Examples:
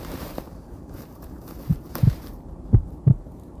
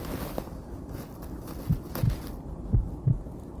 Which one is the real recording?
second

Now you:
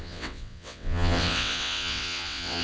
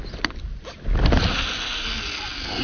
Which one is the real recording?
second